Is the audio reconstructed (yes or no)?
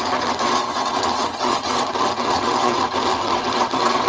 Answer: yes